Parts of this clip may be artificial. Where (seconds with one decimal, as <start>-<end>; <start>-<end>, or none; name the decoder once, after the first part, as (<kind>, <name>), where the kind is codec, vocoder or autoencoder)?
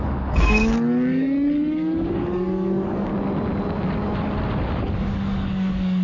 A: 0.0-3.1 (codec, DAC); 5.0-6.0